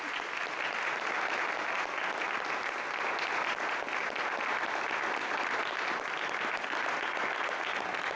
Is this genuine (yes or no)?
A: yes